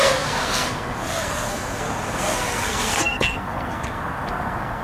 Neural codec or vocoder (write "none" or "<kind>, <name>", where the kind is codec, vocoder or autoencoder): codec, SNAC